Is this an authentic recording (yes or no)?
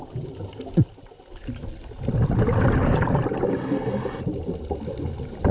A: yes